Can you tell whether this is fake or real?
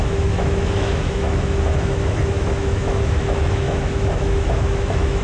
fake